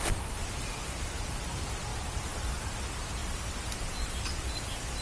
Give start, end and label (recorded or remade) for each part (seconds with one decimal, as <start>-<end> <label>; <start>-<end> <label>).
0.0-0.8 recorded; 0.8-1.4 remade; 1.4-1.9 recorded; 1.9-2.8 remade; 2.8-3.2 recorded; 3.2-5.0 remade